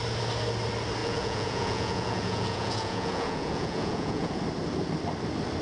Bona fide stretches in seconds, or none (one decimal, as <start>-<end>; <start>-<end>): 0.0-1.0; 4.4-5.6